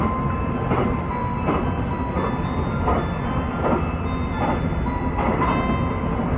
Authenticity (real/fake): real